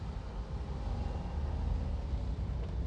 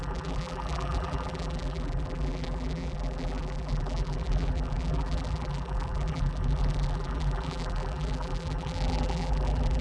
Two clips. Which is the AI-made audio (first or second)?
second